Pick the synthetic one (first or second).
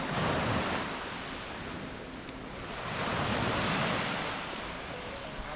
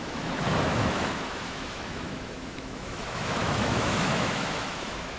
second